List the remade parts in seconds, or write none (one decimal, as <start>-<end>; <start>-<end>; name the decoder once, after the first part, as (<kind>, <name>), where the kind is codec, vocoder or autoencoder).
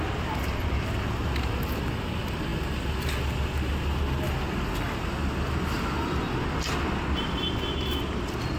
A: none